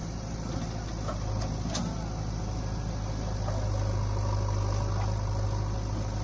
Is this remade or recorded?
recorded